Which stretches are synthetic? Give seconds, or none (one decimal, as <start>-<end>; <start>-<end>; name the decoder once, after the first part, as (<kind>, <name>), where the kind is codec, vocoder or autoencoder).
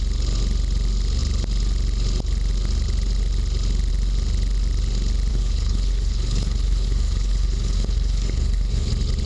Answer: 5.3-8.9 (codec, HILCodec)